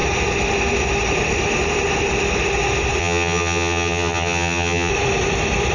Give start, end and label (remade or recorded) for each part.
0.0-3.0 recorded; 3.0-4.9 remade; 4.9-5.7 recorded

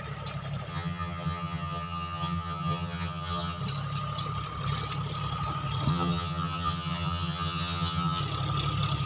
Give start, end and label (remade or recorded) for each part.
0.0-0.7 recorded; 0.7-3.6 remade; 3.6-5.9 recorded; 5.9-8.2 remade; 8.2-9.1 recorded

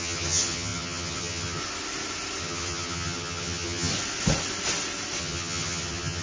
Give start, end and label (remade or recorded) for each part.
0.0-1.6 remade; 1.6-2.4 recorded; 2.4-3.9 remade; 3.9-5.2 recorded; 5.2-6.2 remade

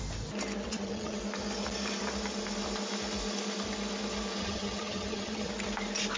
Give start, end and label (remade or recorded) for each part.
0.0-0.7 recorded; 0.7-1.2 remade; 1.2-4.4 recorded; 4.4-5.5 remade; 5.5-6.2 recorded

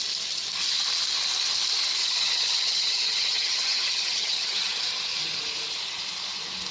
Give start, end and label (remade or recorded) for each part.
0.0-2.0 recorded; 2.0-4.8 remade; 4.8-6.7 recorded

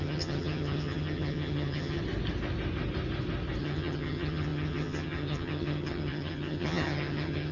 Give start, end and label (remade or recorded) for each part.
0.0-2.0 remade; 2.0-3.6 recorded; 3.6-7.5 remade

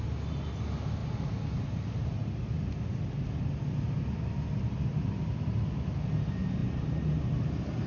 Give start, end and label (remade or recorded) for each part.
0.0-7.9 recorded

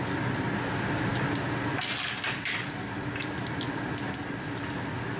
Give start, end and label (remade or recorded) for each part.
0.0-5.2 recorded